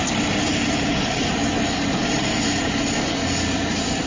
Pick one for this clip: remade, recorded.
recorded